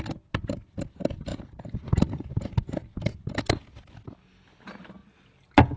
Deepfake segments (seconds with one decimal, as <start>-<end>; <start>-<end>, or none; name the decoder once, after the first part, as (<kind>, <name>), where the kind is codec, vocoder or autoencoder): none